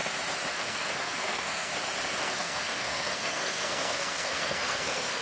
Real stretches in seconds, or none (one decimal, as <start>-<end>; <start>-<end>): 0.0-0.5; 1.7-2.2